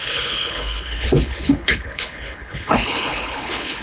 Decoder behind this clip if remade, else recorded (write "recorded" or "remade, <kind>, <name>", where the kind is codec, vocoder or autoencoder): remade, codec, HILCodec